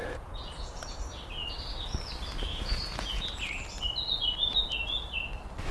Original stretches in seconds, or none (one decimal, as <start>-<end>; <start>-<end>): 1.0-2.5; 3.4-5.7